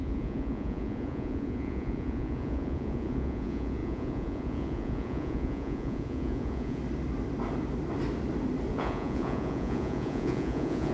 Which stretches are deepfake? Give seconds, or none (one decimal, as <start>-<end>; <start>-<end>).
0.0-6.8; 8.7-10.9